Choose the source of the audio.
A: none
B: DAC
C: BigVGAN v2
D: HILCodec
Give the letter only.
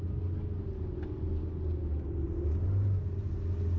A